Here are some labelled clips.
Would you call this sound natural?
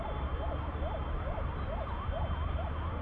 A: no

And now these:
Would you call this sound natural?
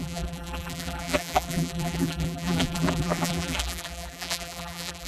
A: no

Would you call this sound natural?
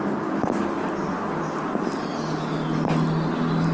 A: yes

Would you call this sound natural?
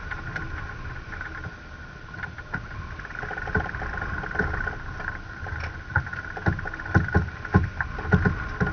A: yes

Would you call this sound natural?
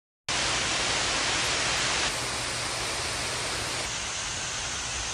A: yes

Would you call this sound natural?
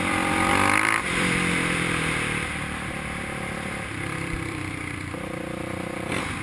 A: no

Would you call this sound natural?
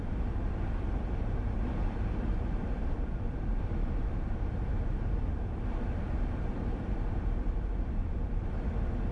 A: no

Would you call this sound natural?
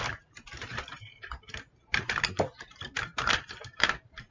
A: no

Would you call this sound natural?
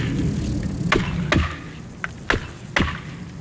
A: yes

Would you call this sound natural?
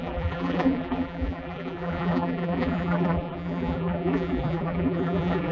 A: no